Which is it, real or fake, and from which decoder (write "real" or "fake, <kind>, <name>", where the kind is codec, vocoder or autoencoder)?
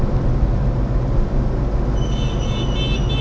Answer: real